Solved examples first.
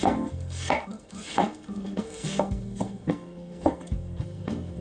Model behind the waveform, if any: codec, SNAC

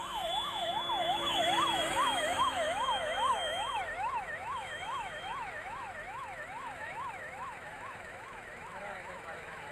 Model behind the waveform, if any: autoencoder, DAC-VAE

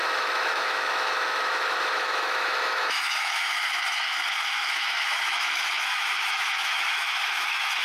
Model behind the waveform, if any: autoencoder, DAC-VAE